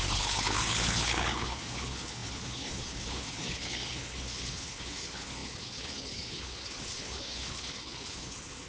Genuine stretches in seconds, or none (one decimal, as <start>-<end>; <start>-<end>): none